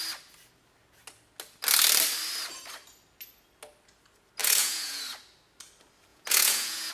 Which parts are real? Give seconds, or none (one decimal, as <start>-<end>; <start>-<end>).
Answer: 0.0-4.4; 5.0-6.1